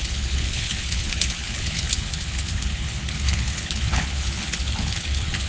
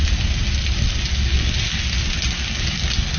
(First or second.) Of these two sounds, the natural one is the second